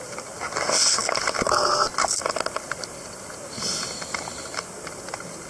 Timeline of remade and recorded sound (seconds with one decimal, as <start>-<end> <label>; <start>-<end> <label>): 0.0-5.5 recorded